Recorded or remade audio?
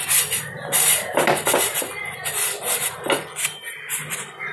recorded